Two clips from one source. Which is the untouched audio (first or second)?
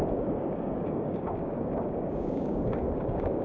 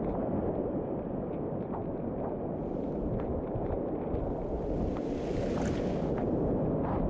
second